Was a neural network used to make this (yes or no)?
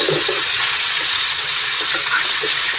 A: yes